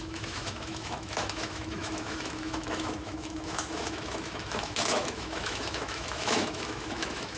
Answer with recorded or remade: remade